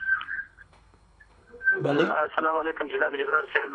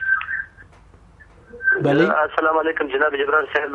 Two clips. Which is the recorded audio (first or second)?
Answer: second